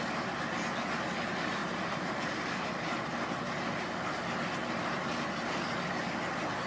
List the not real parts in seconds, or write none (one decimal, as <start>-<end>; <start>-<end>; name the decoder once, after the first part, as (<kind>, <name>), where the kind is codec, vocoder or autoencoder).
1.6-2.7 (vocoder, BigVGAN v2)